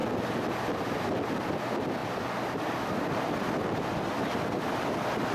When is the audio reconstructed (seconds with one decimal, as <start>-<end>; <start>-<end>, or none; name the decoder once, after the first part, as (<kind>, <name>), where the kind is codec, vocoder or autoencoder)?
none